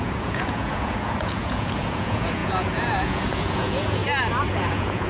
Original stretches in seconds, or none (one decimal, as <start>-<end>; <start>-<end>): 4.0-4.6